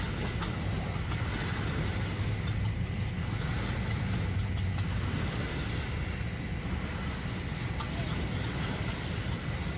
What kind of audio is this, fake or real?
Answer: real